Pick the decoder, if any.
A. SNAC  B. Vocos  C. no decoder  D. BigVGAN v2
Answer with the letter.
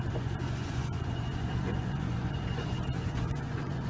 B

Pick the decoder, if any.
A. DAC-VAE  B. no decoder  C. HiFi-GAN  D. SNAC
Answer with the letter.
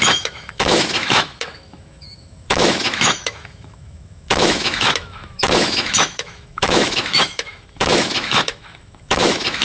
A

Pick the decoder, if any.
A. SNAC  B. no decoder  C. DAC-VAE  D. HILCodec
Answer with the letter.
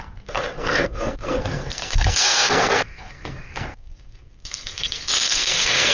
A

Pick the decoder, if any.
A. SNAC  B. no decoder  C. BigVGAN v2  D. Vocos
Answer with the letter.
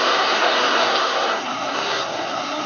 A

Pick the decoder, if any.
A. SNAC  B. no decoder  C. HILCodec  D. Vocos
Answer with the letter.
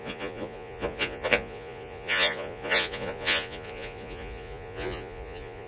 D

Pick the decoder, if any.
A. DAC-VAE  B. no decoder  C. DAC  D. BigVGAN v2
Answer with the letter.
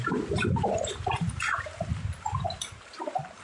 D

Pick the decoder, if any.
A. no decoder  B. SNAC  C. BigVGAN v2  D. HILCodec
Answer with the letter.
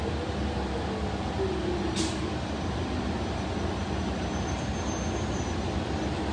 A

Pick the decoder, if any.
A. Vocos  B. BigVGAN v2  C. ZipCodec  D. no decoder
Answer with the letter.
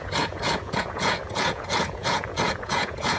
A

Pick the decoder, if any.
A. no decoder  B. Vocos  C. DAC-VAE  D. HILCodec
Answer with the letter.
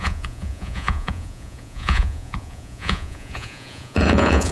B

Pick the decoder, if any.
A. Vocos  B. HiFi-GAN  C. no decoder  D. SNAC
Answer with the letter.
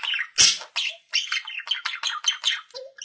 C